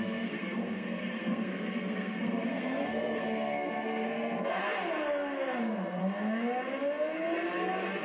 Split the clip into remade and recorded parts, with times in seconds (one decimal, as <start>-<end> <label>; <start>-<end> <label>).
0.0-4.6 remade; 4.6-5.6 recorded; 5.6-6.0 remade; 6.0-8.0 recorded